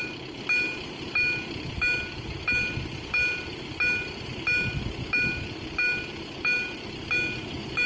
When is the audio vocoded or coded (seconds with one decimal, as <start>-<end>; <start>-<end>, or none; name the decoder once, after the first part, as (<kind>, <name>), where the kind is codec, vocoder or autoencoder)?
none